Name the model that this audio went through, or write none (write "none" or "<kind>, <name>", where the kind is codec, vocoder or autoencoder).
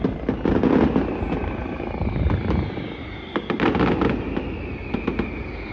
none